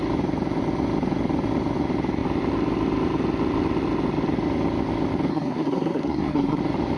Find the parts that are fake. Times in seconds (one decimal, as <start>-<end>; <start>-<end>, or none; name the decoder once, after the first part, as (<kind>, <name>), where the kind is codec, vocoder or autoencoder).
5.3-6.6 (codec, SNAC)